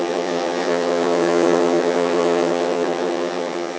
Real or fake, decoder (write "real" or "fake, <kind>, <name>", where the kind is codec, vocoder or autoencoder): fake, vocoder, HiFi-GAN